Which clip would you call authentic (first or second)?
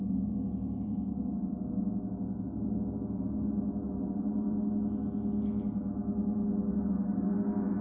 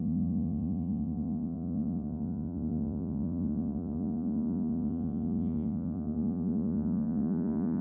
first